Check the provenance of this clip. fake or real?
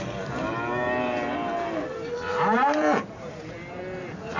fake